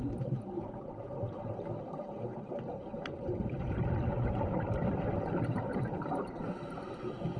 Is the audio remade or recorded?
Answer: remade